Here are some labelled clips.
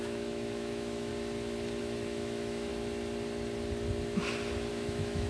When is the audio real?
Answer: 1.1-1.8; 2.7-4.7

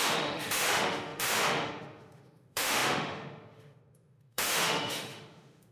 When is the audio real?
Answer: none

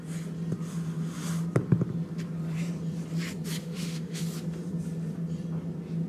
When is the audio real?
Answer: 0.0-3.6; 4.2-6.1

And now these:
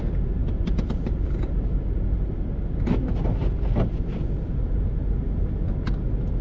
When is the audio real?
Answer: 0.0-6.4